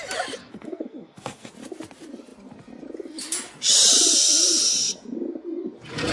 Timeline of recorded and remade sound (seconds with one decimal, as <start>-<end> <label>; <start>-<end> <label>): 0.0-0.4 recorded; 0.4-1.5 remade; 1.5-6.1 recorded